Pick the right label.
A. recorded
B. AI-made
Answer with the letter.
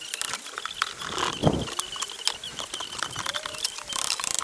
A